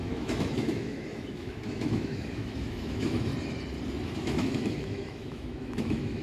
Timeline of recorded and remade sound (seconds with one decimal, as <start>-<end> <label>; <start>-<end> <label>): 0.0-3.3 remade; 3.3-4.0 recorded; 4.0-6.2 remade

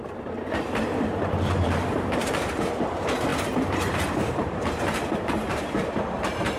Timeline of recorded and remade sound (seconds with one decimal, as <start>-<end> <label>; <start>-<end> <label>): 0.0-6.6 remade